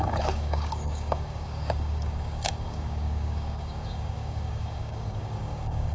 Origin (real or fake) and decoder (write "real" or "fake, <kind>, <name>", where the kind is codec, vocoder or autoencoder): fake, codec, DAC